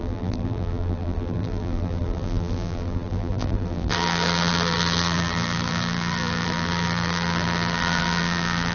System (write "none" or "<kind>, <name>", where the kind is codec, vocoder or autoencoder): vocoder, BigVGAN v2